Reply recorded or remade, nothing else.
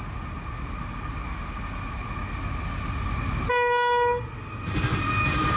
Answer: recorded